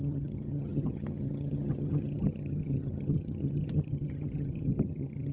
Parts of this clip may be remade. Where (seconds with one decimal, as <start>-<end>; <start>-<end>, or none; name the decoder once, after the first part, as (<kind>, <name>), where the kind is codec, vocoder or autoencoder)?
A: 0.0-5.3 (vocoder, HiFi-GAN)